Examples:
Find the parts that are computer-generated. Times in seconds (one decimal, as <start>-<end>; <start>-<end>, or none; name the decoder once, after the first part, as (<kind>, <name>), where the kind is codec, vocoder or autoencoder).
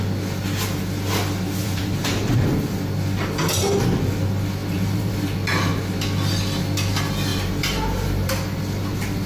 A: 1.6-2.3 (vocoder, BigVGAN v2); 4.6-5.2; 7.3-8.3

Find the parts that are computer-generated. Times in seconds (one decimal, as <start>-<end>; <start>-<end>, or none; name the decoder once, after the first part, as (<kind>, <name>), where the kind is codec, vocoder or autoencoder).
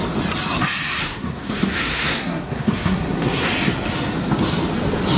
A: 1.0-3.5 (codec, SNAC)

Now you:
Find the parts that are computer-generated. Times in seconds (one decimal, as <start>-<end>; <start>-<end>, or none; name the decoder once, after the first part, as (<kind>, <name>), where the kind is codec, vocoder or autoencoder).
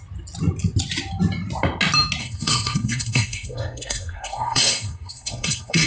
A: 2.2-5.9 (codec, SNAC)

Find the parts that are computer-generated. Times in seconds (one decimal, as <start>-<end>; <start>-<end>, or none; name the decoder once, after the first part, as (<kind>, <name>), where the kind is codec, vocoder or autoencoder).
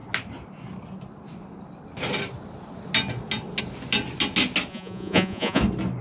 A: 4.7-5.6 (vocoder, Vocos)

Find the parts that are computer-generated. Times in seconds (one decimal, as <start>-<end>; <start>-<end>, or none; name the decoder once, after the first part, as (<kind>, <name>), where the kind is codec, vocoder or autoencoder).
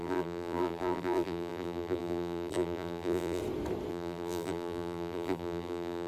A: 0.0-3.4 (vocoder, BigVGAN v2); 3.9-6.1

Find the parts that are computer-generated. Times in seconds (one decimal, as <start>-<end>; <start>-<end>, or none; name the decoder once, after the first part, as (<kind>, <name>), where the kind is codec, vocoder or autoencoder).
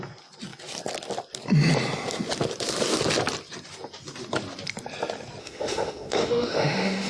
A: 5.4-7.1 (autoencoder, DAC-VAE)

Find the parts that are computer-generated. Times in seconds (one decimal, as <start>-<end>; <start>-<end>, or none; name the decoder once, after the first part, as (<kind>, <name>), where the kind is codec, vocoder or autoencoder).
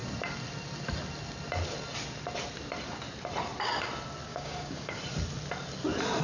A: 4.3-5.0 (codec, DAC)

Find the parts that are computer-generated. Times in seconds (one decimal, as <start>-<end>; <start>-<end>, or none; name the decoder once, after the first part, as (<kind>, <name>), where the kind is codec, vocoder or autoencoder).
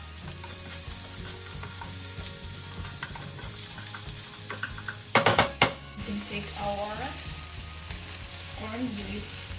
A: 1.3-2.2 (codec, DAC); 5.0-6.1; 8.3-9.6